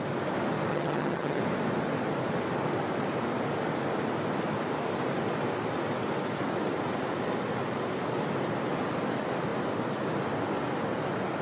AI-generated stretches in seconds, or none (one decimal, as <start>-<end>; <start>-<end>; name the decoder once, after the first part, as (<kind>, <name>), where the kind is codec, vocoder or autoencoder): 0.7-1.4 (vocoder, HiFi-GAN)